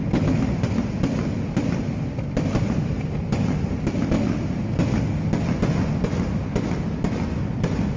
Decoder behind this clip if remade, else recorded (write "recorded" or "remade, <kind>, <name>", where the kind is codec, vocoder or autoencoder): recorded